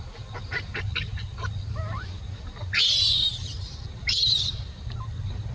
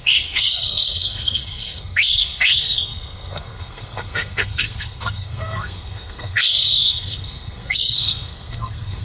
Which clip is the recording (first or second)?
first